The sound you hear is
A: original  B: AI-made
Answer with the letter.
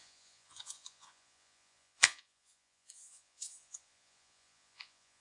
B